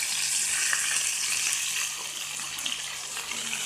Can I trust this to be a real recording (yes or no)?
yes